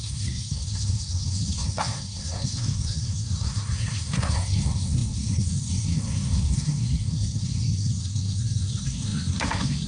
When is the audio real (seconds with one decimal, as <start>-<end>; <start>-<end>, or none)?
none